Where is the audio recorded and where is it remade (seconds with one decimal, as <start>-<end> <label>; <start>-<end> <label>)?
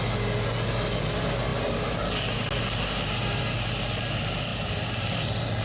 0.0-5.6 recorded